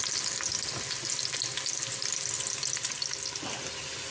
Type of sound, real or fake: real